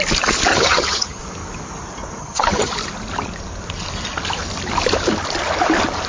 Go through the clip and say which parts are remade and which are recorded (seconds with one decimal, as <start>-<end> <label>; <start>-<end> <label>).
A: 0.0-0.5 recorded; 0.5-1.2 remade; 1.2-2.2 recorded; 2.2-2.7 remade; 2.7-6.1 recorded